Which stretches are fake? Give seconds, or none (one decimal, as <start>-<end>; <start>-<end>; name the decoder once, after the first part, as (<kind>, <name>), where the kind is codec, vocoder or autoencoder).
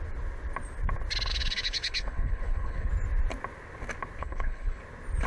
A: 1.3-2.9 (codec, HILCodec); 4.2-4.8